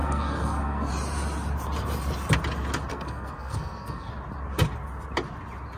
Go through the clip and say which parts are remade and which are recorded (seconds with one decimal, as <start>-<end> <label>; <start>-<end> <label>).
0.0-0.9 remade; 0.9-2.9 recorded; 2.9-4.1 remade; 4.1-5.8 recorded